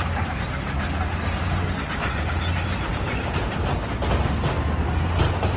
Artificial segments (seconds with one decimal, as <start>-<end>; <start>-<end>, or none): 2.9-4.0